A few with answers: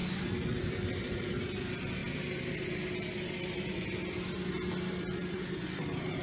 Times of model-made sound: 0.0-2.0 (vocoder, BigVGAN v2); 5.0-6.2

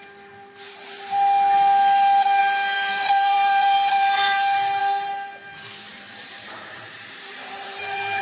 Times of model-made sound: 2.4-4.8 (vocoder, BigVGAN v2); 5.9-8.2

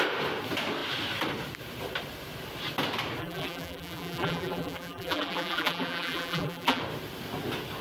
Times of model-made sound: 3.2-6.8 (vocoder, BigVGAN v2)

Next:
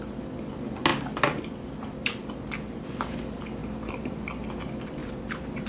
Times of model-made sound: 3.6-4.1 (vocoder, BigVGAN v2); 5.0-5.7

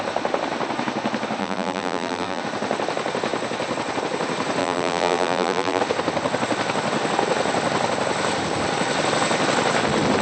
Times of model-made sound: 1.4-2.4 (vocoder, BigVGAN v2); 4.6-5.8

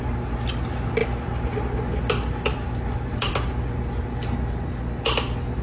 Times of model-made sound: none

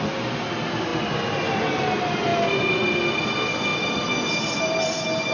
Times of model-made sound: none

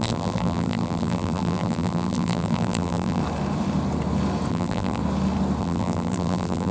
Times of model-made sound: 0.0-3.2 (vocoder, BigVGAN v2); 4.5-5.0; 5.6-6.7